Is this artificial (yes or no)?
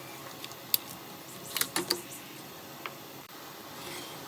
no